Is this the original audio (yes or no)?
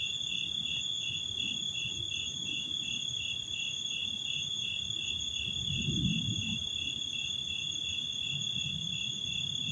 yes